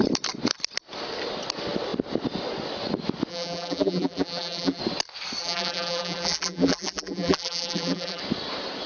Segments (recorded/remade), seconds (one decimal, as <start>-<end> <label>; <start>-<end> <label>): 0.0-3.3 recorded; 3.3-4.8 remade; 4.8-5.4 recorded; 5.4-8.2 remade; 8.2-8.9 recorded